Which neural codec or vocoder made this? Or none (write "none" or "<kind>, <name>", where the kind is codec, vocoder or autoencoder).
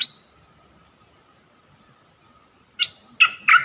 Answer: none